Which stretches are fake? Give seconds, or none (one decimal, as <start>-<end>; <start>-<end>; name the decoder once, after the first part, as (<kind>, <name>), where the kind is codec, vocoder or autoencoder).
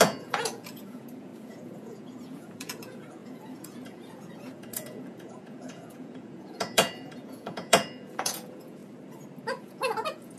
0.0-8.8 (vocoder, Vocos); 9.4-10.4